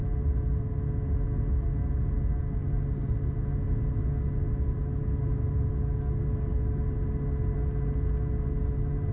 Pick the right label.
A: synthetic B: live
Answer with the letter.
B